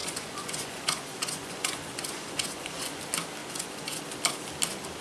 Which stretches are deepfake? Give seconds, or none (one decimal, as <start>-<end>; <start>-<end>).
0.0-3.0; 3.4-4.0